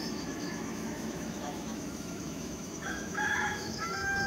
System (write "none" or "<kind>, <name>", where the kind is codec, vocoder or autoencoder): autoencoder, DAC-VAE